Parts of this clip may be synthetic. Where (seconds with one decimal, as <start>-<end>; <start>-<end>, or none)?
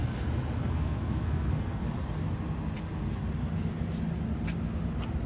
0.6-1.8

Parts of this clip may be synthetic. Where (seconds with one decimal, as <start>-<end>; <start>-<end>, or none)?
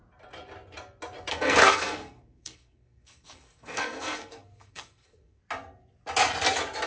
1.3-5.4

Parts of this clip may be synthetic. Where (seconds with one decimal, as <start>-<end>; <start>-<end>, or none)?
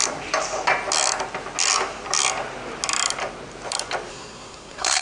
4.1-5.0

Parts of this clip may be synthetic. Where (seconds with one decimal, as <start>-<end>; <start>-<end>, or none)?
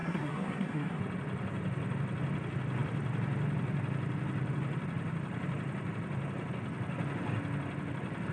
0.0-1.0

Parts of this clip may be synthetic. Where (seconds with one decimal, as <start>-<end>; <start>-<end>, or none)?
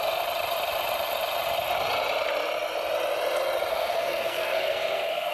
3.7-5.3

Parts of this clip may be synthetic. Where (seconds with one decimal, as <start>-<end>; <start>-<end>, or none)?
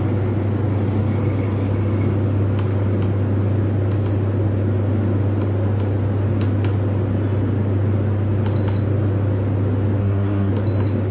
10.0-10.5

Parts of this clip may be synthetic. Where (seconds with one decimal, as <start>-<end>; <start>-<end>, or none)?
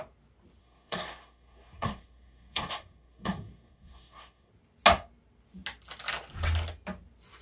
0.6-4.5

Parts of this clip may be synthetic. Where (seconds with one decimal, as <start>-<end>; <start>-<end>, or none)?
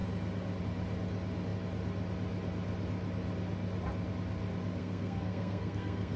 4.8-6.2